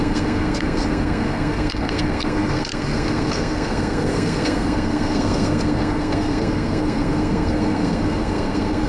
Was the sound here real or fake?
fake